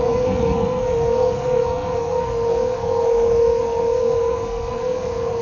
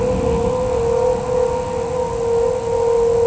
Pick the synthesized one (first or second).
first